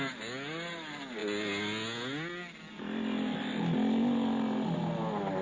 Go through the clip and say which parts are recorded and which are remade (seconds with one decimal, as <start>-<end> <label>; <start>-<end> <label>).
0.0-5.4 recorded